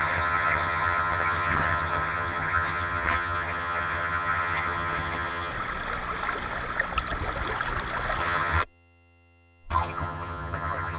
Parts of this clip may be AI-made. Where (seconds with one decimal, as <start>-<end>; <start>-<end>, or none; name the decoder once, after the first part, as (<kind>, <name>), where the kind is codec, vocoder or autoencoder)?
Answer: 0.0-5.5 (vocoder, HiFi-GAN); 8.2-11.0